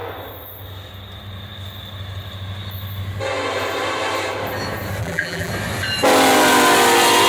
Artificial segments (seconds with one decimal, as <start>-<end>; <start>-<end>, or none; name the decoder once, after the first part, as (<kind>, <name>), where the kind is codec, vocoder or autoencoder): 5.0-5.5 (vocoder, BigVGAN v2)